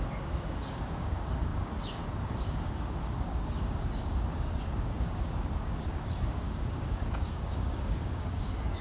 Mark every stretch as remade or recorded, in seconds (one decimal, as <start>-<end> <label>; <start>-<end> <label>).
0.0-8.8 remade